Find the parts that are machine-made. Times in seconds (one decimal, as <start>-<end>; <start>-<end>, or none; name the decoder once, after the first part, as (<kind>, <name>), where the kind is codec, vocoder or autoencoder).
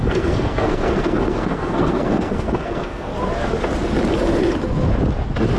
0.0-3.1 (codec, SNAC)